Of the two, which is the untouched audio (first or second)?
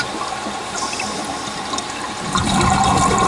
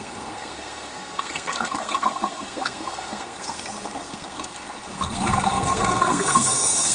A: first